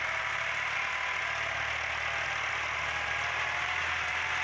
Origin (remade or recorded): recorded